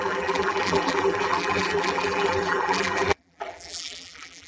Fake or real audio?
fake